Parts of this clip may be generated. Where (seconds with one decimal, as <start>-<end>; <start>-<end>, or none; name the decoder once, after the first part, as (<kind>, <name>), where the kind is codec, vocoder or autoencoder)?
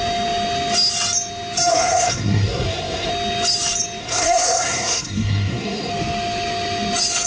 1.7-3.1 (codec, SNAC); 4.0-5.9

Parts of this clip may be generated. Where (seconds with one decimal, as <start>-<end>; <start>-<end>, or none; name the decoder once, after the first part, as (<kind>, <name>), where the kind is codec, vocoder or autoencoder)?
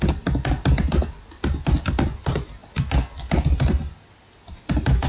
none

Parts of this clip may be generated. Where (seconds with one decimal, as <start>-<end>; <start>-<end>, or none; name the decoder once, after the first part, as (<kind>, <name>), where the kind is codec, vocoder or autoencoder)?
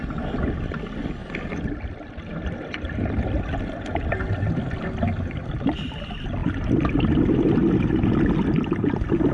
none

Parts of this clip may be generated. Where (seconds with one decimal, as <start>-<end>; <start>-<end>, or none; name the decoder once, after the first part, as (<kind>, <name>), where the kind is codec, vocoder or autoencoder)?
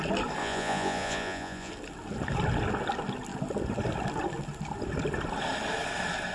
0.4-1.7 (vocoder, Vocos)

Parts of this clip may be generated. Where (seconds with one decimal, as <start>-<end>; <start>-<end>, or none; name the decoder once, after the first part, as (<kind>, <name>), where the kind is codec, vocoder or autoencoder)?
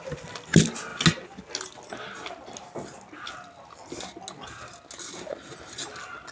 none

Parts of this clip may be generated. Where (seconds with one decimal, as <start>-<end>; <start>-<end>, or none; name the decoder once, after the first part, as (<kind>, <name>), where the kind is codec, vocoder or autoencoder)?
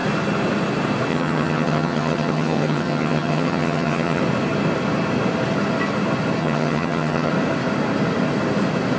1.1-4.2 (vocoder, HiFi-GAN); 6.4-7.3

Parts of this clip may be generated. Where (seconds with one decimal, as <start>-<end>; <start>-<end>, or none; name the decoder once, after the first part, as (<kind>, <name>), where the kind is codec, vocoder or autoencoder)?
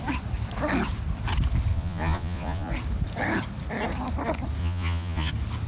1.7-2.7 (vocoder, Vocos); 4.6-5.3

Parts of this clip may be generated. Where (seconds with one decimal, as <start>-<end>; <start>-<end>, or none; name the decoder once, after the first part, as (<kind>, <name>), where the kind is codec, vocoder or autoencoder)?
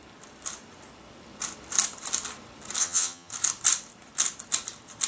2.8-3.3 (vocoder, HiFi-GAN)